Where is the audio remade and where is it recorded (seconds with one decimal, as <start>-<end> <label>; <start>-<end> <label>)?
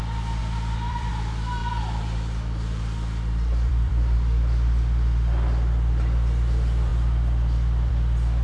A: 0.0-0.4 recorded; 0.4-1.1 remade; 1.1-1.6 recorded; 1.6-3.9 remade; 3.9-8.4 recorded